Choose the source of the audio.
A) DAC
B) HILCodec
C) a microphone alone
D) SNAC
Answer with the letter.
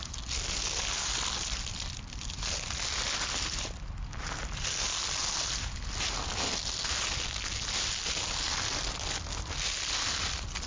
C